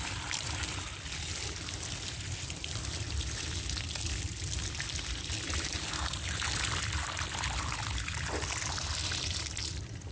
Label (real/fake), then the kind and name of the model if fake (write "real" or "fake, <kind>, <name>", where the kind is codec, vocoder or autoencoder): real